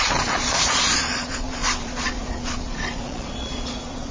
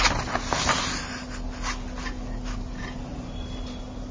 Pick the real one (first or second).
second